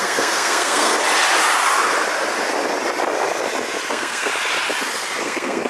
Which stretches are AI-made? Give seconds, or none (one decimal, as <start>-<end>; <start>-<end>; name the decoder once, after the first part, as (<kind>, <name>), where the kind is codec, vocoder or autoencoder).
0.0-0.9 (codec, SNAC); 3.9-4.3; 5.2-5.7